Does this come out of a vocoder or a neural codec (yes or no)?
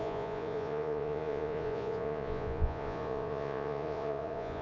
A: yes